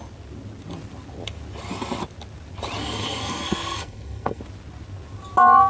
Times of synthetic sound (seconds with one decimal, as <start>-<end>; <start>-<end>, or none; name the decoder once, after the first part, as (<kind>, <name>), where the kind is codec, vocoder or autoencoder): 2.8-4.4 (codec, SNAC)